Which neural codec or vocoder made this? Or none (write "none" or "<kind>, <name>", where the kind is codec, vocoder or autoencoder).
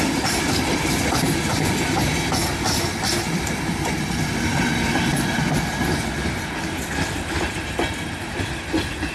none